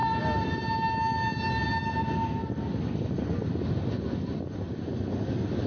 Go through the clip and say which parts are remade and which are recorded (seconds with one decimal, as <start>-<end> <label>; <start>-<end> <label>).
0.0-5.7 recorded